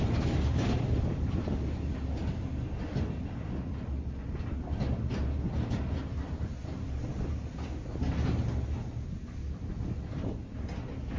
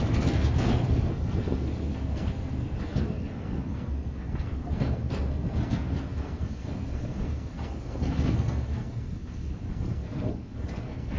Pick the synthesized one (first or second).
second